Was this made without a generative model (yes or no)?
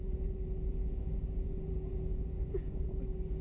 no